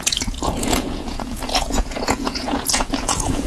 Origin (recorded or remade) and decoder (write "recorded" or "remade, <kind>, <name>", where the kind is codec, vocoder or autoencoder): remade, vocoder, Vocos